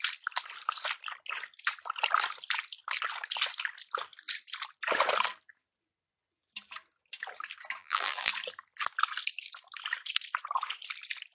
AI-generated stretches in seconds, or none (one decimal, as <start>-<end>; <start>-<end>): 7.8-8.3